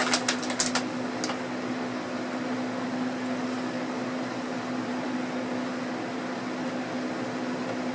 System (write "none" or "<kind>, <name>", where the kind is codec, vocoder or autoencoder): none